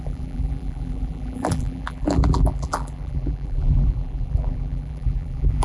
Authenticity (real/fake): fake